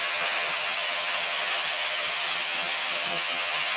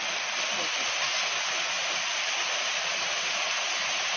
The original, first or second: second